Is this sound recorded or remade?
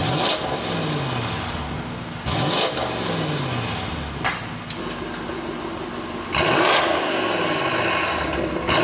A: recorded